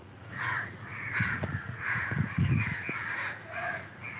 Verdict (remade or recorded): remade